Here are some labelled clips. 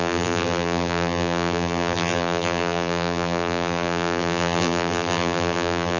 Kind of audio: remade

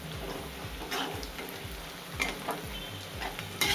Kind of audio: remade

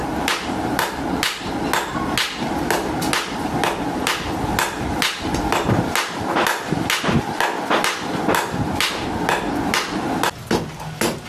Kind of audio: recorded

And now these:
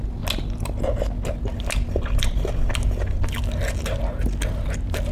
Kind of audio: recorded